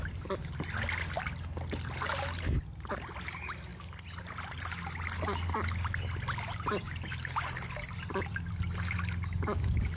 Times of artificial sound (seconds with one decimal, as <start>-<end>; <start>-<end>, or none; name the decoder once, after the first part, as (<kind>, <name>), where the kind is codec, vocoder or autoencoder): none